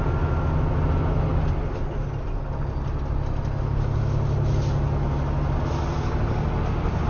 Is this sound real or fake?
real